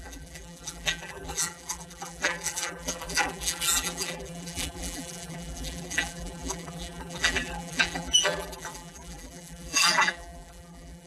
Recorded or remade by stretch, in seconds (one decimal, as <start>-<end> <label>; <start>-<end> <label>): 0.0-11.1 remade